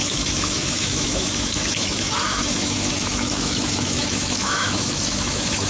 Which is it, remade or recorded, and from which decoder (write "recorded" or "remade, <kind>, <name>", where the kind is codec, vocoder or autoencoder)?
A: remade, autoencoder, DAC-VAE